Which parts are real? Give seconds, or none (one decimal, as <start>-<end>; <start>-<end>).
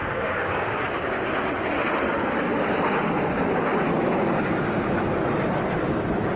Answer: 0.7-6.4